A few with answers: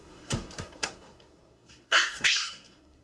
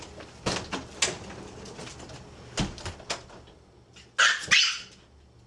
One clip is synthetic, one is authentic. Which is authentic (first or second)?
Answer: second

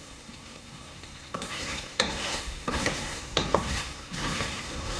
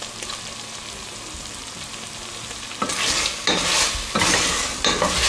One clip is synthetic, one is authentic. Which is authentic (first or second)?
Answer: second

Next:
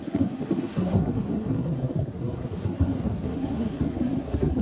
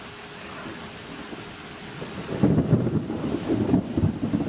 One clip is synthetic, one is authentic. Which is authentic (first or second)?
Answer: second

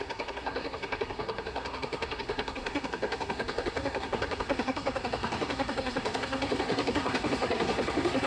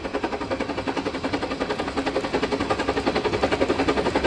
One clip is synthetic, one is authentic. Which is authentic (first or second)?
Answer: second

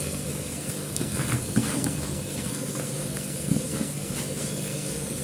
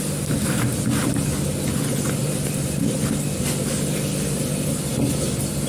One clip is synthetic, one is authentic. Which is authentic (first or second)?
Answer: second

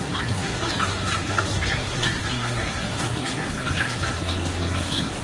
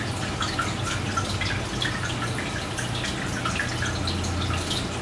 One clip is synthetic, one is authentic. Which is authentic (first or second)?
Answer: second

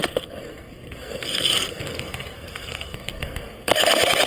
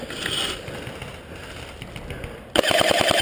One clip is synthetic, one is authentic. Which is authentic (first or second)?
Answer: second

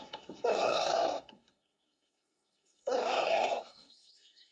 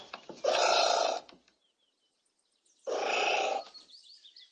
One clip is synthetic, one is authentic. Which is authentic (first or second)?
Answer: second